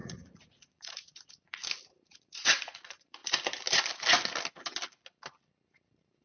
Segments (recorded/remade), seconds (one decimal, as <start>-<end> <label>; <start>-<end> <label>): 0.0-1.6 remade; 1.6-2.2 recorded; 2.2-3.2 remade; 3.2-6.2 recorded